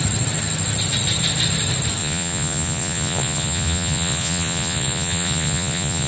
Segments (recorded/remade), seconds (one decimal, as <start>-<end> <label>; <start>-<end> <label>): 0.0-2.0 recorded; 2.0-6.1 remade

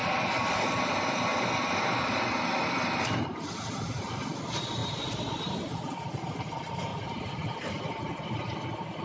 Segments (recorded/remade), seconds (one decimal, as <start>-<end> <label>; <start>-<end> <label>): 0.0-6.9 recorded; 6.9-8.0 remade; 8.0-9.0 recorded

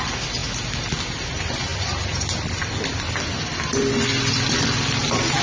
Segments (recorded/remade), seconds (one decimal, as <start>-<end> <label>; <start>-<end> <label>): 0.0-5.4 recorded

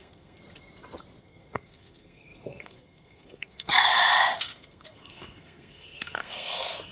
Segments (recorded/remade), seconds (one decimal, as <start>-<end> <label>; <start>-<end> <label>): 0.0-0.4 remade; 0.4-1.2 recorded; 1.2-3.9 remade; 3.9-4.4 recorded; 4.4-6.9 remade

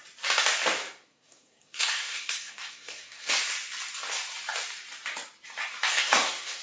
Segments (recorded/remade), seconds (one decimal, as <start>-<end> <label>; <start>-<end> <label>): 0.0-0.8 recorded; 0.8-3.3 remade; 3.3-5.9 recorded; 5.9-6.6 remade

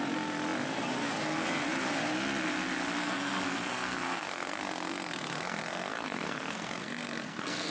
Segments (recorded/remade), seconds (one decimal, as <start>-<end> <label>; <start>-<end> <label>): 0.0-3.0 recorded; 3.0-7.7 remade

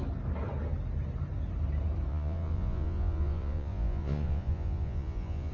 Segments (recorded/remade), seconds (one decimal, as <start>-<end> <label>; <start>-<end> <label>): 0.0-2.1 recorded; 2.1-5.5 remade

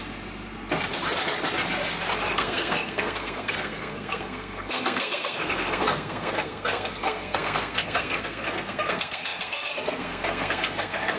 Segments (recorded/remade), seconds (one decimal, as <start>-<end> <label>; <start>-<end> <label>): 0.0-2.3 recorded; 2.3-11.2 remade